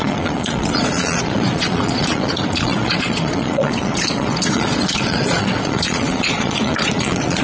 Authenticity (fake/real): fake